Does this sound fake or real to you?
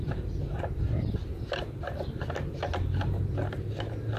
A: real